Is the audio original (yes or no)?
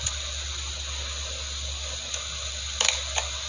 yes